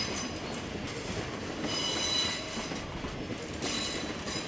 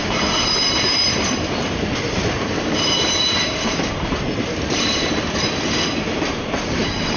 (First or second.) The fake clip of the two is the second